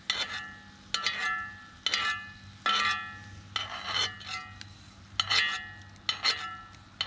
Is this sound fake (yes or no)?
no